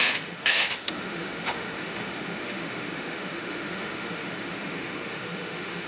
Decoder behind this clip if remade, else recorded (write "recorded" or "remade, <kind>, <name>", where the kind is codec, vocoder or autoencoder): remade, autoencoder, DAC-VAE